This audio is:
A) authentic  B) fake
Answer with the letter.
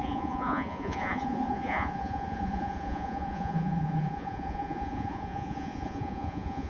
B